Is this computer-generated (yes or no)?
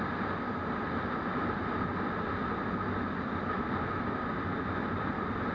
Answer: no